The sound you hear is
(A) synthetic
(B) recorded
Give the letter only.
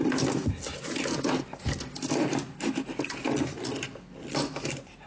B